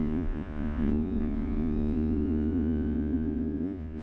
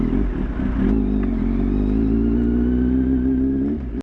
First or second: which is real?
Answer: second